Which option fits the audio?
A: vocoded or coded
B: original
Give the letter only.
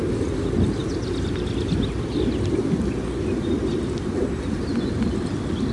B